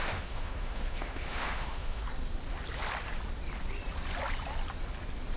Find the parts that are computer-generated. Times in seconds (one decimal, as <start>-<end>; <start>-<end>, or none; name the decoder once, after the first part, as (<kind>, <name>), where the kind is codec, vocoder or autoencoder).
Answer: 0.0-2.0 (autoencoder, DAC-VAE)